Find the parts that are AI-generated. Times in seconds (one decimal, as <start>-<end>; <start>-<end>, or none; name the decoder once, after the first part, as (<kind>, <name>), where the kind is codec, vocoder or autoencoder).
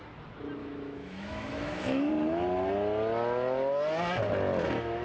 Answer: 0.6-2.1 (autoencoder, DAC-VAE)